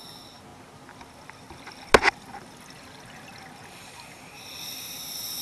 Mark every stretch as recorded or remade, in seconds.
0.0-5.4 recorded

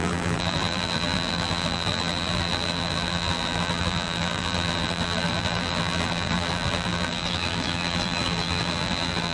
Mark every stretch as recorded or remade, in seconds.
0.0-9.3 remade